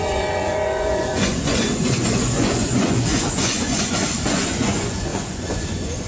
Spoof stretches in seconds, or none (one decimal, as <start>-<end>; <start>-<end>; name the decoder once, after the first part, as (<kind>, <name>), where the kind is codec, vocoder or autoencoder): 0.0-6.1 (vocoder, Vocos)